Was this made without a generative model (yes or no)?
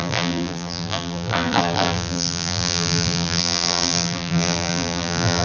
no